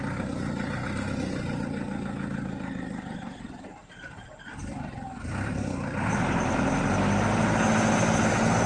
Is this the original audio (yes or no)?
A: yes